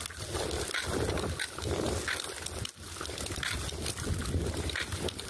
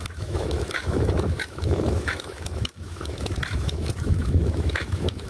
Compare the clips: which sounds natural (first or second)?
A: first